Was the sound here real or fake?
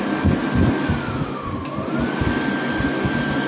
real